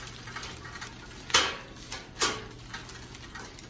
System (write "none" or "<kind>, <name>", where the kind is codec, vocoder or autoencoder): none